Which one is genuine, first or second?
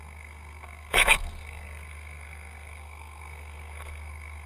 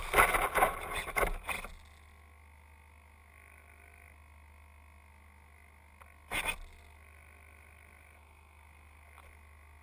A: second